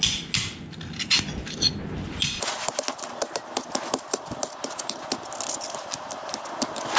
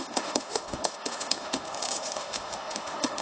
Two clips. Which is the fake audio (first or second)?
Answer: second